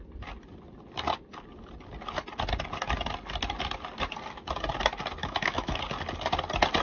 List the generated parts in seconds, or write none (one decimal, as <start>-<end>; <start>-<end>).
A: 5.2-5.8